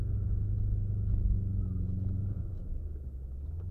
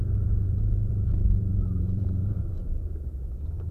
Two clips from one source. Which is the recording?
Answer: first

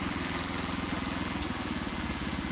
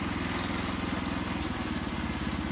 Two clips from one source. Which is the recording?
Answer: second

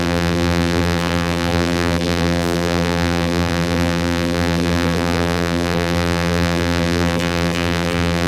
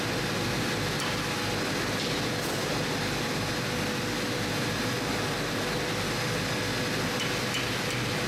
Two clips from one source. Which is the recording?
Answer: second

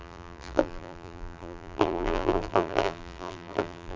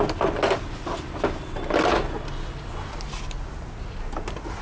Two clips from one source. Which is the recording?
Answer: second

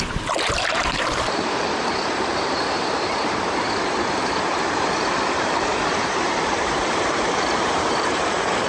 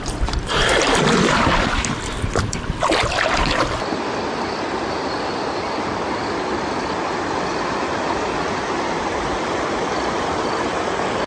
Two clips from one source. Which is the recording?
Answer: second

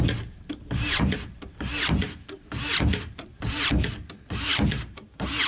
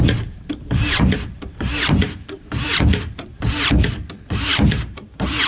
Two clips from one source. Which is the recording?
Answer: first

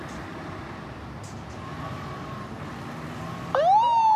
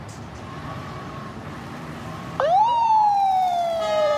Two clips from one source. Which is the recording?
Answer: first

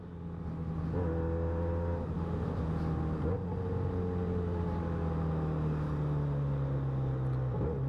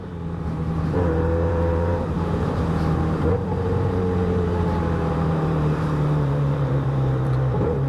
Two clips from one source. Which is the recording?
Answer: first